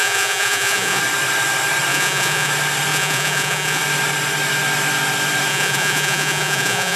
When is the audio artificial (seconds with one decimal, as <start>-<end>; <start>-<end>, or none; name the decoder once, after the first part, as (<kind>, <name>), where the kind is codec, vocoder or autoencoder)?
0.0-1.0 (vocoder, Vocos); 1.9-2.5; 2.9-3.8; 5.5-7.0